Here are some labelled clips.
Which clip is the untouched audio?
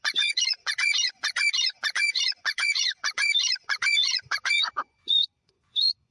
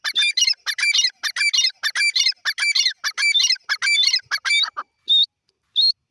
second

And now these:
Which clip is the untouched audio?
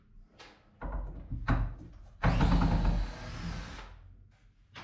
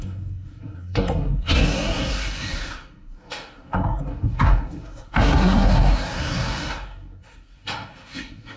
first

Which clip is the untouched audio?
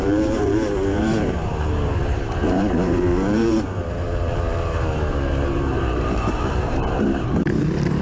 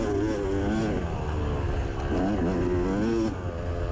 second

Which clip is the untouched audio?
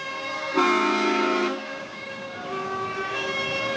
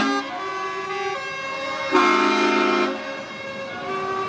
second